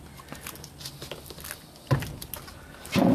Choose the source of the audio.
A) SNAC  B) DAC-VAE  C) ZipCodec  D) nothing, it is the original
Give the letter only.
D